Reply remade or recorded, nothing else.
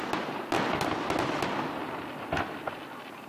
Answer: recorded